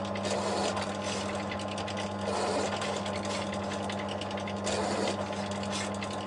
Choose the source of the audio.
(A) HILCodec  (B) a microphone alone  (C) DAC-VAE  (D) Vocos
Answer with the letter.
B